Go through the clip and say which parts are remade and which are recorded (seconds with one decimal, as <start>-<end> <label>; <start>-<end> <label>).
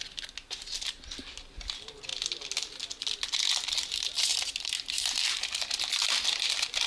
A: 0.0-6.9 recorded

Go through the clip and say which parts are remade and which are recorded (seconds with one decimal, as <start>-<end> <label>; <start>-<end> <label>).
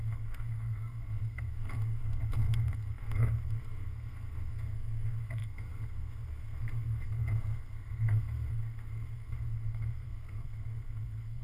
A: 0.0-11.4 remade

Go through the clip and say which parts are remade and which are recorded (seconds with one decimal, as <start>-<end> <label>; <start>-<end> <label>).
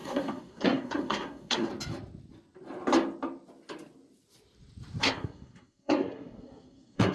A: 0.0-1.7 remade; 1.7-5.0 recorded; 5.0-7.1 remade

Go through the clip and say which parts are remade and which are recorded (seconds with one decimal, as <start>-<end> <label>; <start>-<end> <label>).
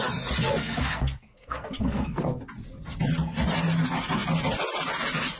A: 0.0-0.6 recorded; 0.6-2.4 remade; 2.4-5.4 recorded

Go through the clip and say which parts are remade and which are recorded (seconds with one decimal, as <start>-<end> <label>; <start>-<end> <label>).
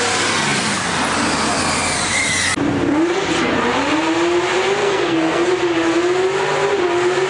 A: 0.0-4.8 recorded; 4.8-5.5 remade; 5.5-7.3 recorded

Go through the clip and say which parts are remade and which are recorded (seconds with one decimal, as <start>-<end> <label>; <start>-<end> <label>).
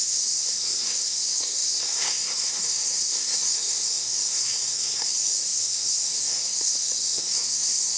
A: 0.0-8.0 remade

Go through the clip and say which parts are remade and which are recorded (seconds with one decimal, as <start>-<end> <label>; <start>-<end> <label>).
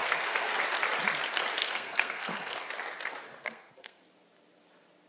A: 0.0-0.6 remade; 0.6-1.6 recorded; 1.6-2.7 remade; 2.7-3.4 recorded; 3.4-4.0 remade; 4.0-5.1 recorded